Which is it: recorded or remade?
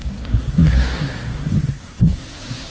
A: remade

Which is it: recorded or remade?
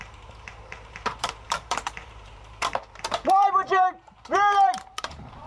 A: remade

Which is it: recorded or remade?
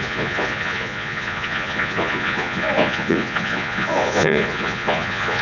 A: remade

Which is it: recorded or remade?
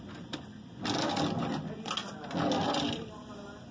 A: recorded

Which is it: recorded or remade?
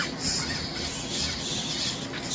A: recorded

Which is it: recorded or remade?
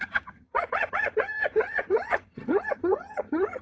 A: remade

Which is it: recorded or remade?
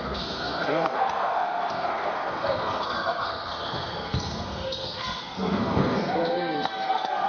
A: remade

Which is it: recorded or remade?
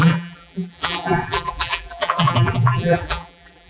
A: remade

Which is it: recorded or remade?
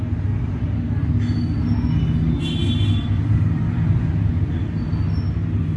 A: recorded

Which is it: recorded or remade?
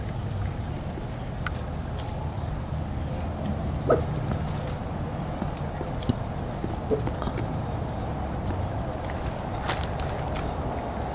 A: recorded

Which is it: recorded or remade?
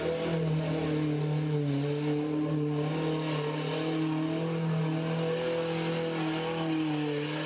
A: recorded